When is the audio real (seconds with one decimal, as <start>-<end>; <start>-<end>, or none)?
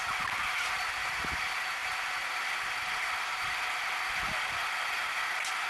0.0-5.7